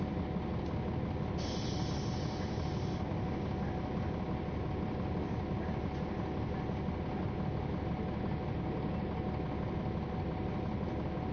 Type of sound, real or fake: real